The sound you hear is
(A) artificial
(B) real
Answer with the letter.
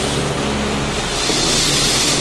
B